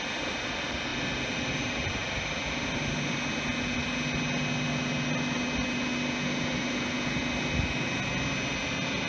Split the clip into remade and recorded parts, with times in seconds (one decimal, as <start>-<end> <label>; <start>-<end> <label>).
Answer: 0.0-9.1 recorded